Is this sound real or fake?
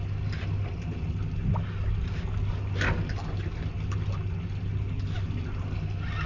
real